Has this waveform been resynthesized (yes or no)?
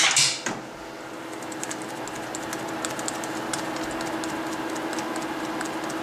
no